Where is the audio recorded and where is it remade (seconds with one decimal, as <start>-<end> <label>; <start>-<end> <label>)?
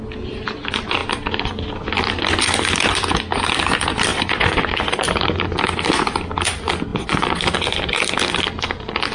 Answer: 0.0-4.1 recorded; 4.1-5.3 remade; 5.3-9.1 recorded